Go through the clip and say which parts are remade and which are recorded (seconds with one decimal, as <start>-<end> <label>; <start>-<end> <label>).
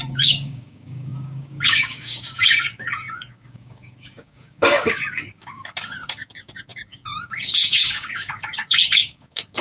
0.0-9.6 remade